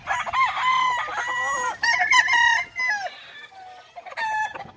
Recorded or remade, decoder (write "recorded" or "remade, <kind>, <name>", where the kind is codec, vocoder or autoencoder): recorded